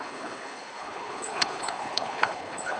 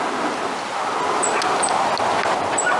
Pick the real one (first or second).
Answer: second